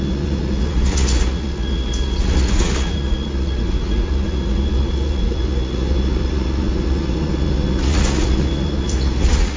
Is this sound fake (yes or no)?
yes